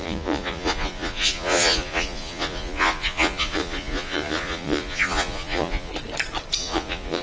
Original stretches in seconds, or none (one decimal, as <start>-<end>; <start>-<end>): 5.9-6.6